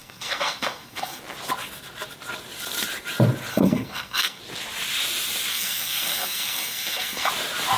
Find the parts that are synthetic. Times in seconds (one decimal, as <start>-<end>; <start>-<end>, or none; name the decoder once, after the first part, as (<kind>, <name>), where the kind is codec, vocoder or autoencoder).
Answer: 0.0-1.2 (codec, SNAC); 3.5-4.4; 5.5-7.3